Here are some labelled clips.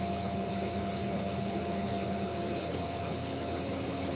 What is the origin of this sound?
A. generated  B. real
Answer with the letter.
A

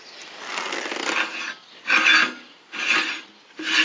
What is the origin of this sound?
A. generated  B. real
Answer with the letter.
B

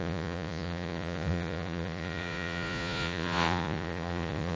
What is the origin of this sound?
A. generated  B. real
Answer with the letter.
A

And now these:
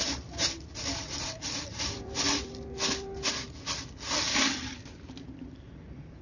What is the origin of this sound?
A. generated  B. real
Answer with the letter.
A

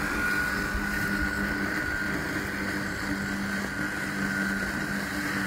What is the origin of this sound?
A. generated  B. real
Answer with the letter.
B